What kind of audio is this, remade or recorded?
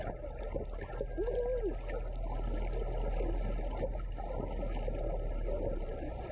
recorded